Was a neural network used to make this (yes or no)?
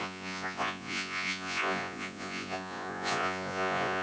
yes